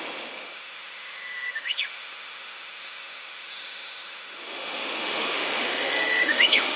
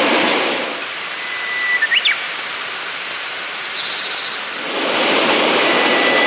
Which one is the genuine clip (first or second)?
second